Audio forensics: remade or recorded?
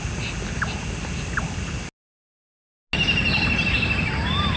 recorded